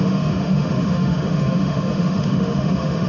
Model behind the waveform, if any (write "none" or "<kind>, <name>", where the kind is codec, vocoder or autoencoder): autoencoder, DAC-VAE